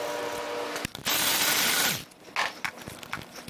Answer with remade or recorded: recorded